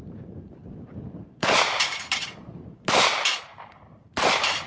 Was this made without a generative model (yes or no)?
no